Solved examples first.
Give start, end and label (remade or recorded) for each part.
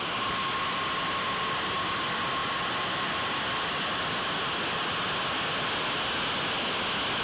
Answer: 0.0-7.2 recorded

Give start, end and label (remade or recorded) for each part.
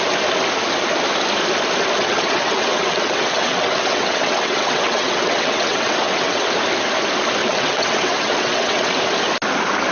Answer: 0.0-2.0 recorded; 2.0-6.5 remade; 6.5-7.4 recorded; 7.4-9.0 remade; 9.0-9.9 recorded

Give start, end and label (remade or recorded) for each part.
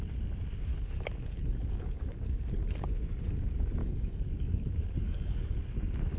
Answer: 0.0-0.7 recorded; 0.7-2.2 remade; 2.2-3.8 recorded; 3.8-5.6 remade; 5.6-6.2 recorded